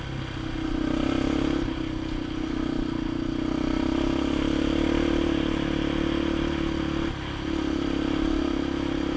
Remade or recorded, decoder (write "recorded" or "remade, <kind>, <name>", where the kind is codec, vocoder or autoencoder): recorded